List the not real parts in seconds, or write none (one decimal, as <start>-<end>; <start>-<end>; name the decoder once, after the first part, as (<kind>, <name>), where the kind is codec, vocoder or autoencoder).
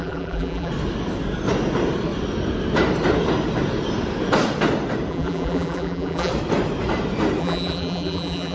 0.0-0.7 (vocoder, BigVGAN v2); 5.1-6.3; 7.4-8.5